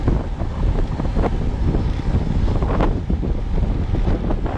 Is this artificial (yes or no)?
no